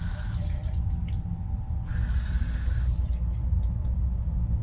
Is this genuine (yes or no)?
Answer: yes